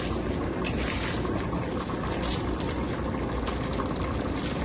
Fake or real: real